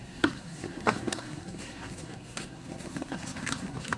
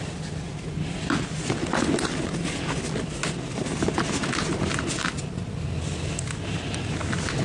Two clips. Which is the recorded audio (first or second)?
second